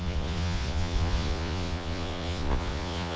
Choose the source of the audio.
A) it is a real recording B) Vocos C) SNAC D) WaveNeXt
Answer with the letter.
B